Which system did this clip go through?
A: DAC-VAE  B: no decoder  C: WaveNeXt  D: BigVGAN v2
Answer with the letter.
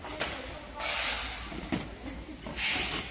B